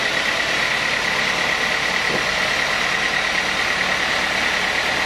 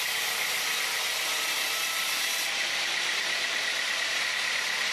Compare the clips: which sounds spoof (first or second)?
second